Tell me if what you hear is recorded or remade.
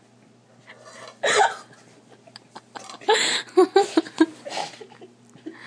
recorded